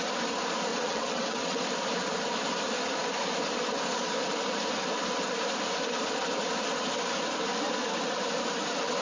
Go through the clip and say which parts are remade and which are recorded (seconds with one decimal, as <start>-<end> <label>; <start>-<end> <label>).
0.0-0.7 recorded; 0.7-1.6 remade; 1.6-9.0 recorded